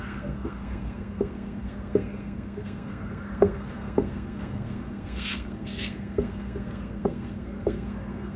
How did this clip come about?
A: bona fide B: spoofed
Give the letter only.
B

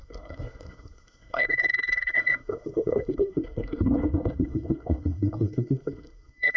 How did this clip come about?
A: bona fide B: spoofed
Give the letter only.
B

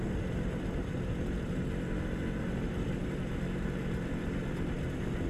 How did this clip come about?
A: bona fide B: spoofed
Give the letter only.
A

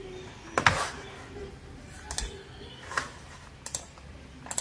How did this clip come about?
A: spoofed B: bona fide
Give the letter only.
B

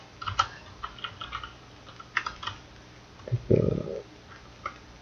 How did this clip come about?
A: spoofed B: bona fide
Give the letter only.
B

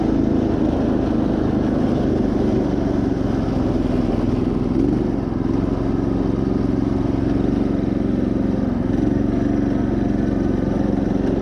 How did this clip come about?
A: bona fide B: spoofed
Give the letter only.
A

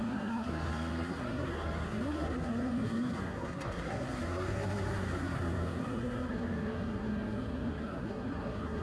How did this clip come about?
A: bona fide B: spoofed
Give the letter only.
B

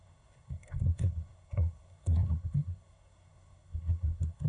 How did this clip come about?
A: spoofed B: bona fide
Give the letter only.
A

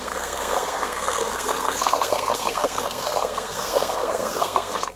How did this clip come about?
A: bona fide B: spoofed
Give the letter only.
B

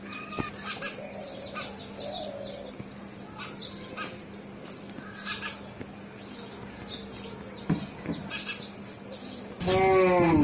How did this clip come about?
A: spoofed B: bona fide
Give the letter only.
B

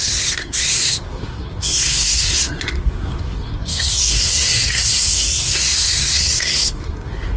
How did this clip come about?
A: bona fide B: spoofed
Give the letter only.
B